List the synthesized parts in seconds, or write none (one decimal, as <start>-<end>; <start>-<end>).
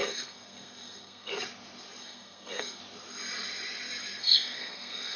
0.0-1.3; 2.0-2.8; 4.2-5.2